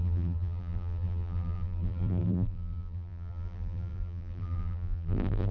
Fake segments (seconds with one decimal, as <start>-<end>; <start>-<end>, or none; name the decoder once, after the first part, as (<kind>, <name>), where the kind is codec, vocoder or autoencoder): 0.0-5.5 (vocoder, BigVGAN v2)